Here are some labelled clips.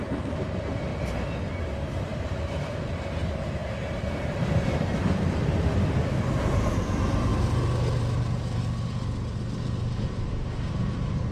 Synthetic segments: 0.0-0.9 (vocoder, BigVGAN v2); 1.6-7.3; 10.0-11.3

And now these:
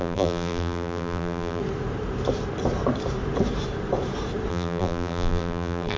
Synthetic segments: 0.0-1.6 (vocoder, BigVGAN v2); 4.5-6.0

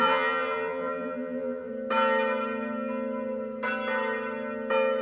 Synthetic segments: 0.0-1.7 (vocoder, BigVGAN v2)

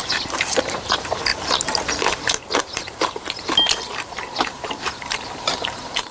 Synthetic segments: 0.0-6.1 (vocoder, BigVGAN v2)

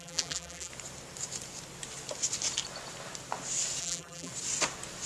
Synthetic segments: 0.0-0.7 (vocoder, BigVGAN v2); 3.8-4.3

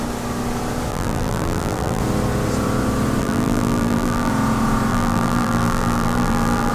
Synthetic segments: 0.9-2.0 (vocoder, BigVGAN v2); 3.2-4.3; 4.9-6.7